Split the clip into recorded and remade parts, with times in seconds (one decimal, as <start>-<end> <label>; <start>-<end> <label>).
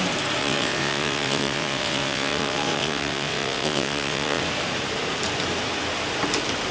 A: 0.0-0.4 recorded; 0.4-4.4 remade; 4.4-6.7 recorded